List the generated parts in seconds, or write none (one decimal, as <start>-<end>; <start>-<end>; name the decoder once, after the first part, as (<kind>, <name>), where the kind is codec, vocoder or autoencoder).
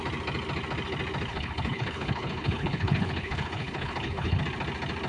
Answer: 1.3-4.4 (codec, HILCodec)